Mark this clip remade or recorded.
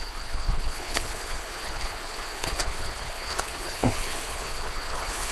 remade